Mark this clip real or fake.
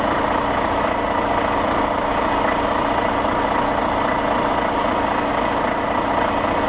real